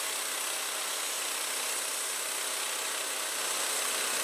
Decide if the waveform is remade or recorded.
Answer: recorded